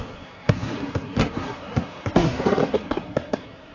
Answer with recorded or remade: remade